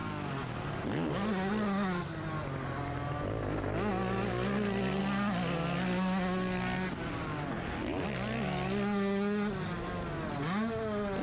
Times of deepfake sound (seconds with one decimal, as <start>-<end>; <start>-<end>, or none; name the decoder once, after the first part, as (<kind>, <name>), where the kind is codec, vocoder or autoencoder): none

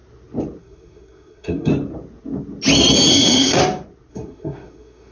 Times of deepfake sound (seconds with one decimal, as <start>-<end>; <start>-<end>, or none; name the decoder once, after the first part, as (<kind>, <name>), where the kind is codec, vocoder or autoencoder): 0.6-1.7 (codec, SNAC); 3.1-3.6; 4.1-5.1

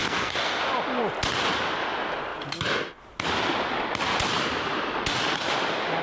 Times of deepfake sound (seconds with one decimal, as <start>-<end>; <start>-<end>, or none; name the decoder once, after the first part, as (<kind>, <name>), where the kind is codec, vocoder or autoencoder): 0.0-0.6 (codec, SNAC)

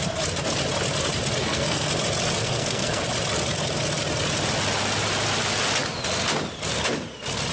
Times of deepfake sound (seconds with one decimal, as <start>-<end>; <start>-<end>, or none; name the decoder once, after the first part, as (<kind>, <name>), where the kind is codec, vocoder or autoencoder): 1.4-1.9 (codec, SNAC); 2.4-3.0

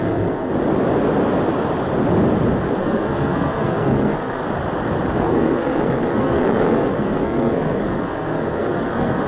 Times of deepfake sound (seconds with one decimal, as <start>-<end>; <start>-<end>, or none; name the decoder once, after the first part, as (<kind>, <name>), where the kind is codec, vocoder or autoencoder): 0.0-0.5 (codec, SNAC); 2.8-4.4; 5.2-9.3